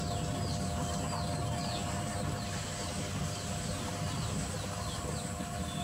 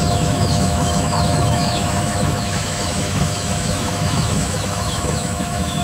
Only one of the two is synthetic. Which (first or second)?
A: second